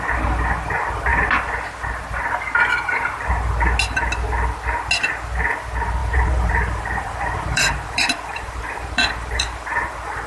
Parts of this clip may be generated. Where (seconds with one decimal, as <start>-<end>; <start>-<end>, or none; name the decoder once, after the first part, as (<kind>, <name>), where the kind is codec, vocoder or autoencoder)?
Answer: 6.0-10.3 (vocoder, BigVGAN v2)